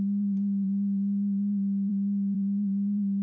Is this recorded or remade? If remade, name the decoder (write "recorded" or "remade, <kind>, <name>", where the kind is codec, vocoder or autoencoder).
remade, vocoder, BigVGAN v2